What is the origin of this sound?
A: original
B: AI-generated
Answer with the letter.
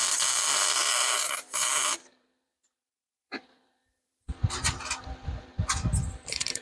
B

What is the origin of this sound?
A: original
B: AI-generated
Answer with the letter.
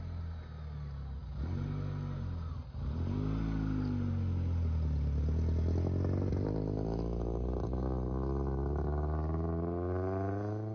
A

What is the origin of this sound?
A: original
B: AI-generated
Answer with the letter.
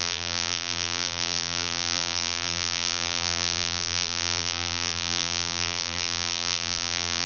B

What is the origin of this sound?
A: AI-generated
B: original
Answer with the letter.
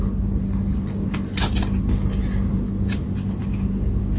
B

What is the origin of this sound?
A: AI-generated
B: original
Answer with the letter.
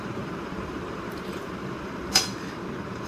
A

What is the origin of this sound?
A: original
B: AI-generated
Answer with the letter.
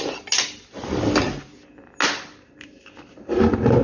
A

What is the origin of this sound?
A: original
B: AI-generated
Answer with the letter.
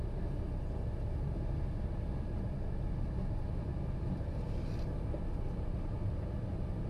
B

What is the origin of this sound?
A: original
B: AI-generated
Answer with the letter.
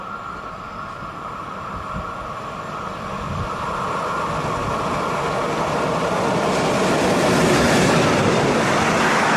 A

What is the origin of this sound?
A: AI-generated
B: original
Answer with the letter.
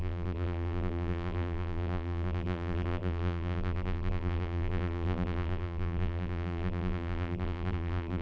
A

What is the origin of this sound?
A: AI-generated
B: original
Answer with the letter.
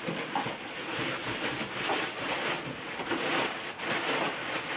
B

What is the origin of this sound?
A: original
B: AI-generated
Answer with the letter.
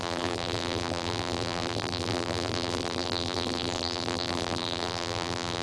B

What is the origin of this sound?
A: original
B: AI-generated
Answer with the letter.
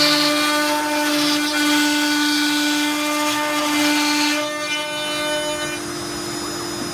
A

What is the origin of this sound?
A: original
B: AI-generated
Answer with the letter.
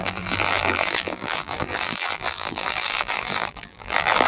B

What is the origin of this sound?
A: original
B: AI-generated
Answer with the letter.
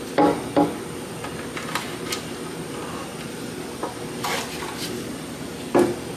A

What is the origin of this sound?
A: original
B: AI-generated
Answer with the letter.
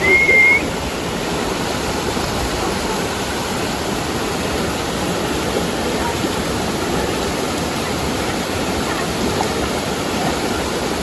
B